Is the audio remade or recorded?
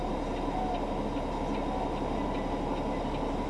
recorded